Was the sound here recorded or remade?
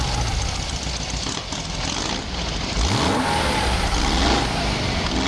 recorded